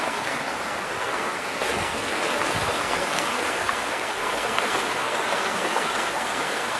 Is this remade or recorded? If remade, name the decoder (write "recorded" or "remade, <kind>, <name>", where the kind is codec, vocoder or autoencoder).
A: remade, codec, SNAC